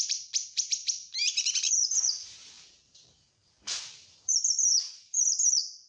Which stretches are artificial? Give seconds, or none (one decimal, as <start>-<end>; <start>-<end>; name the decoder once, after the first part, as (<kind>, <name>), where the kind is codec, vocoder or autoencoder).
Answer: 0.0-5.9 (vocoder, BigVGAN v2)